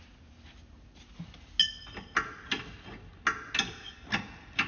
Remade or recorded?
recorded